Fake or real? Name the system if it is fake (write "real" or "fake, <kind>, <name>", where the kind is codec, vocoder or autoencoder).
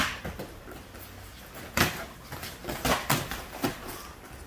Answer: real